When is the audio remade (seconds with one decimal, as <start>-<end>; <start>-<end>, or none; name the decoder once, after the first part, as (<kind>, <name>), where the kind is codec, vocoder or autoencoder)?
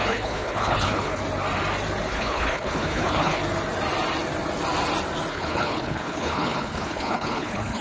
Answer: 0.0-1.2 (codec, HILCodec); 2.1-3.4; 5.3-7.8